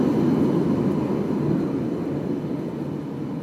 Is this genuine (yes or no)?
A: yes